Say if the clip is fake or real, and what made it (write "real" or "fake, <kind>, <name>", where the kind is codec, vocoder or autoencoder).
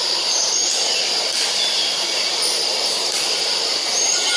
fake, vocoder, BigVGAN v2